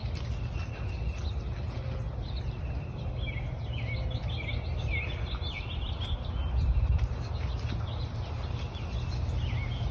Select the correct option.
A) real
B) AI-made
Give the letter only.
A